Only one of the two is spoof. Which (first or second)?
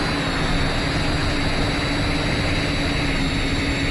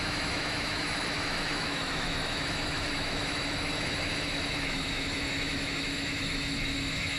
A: second